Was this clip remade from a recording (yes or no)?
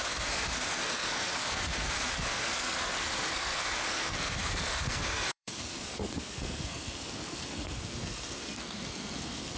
yes